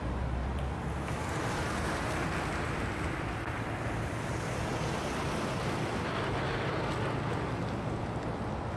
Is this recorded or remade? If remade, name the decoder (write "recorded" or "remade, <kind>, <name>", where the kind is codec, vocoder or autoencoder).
recorded